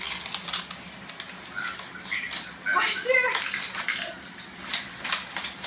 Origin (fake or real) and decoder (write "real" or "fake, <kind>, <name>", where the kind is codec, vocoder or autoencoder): real